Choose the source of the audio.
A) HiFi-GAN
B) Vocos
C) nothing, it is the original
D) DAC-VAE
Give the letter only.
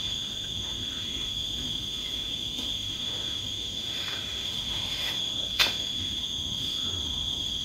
D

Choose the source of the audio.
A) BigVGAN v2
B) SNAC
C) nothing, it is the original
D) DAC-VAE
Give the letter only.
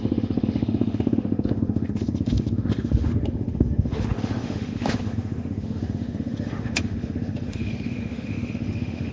D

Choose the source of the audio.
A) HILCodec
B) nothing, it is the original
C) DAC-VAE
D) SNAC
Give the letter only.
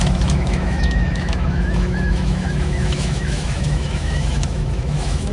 C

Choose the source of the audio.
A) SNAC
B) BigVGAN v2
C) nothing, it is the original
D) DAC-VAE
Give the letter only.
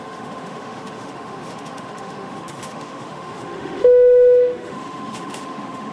D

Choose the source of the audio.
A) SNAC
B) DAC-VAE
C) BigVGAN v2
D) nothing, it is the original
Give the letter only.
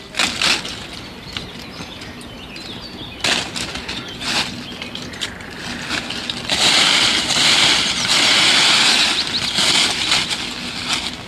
D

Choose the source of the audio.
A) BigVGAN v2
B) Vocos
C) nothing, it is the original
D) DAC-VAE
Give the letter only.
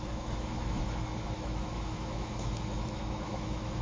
D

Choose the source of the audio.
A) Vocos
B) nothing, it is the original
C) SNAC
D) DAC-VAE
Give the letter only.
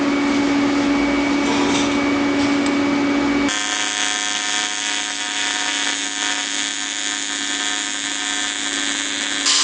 B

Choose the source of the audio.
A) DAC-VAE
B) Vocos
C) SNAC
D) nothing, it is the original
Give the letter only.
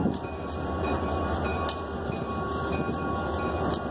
D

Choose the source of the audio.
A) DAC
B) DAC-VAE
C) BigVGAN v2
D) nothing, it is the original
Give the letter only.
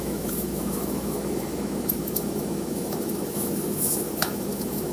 B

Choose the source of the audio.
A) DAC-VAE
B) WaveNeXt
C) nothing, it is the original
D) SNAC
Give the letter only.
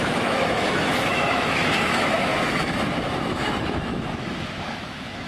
A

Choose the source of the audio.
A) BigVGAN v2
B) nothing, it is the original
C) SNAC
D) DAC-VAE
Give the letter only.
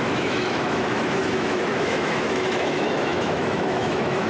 D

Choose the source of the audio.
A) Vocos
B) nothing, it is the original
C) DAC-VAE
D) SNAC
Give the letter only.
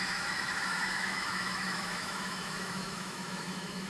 C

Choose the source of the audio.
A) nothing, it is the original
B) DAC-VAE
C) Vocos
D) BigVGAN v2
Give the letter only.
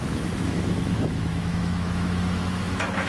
B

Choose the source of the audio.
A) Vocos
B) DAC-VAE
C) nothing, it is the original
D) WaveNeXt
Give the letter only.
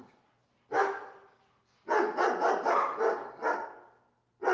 C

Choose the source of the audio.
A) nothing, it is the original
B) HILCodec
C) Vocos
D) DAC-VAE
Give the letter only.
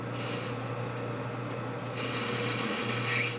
A